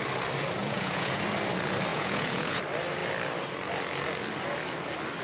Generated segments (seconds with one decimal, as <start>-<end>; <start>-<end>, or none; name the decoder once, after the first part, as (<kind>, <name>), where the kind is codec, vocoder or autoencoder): 0.6-1.2 (vocoder, Vocos); 1.9-2.6